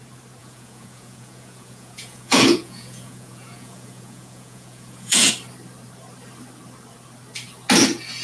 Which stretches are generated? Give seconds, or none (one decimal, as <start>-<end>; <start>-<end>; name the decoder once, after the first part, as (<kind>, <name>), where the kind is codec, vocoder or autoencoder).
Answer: 0.4-5.3 (vocoder, Vocos)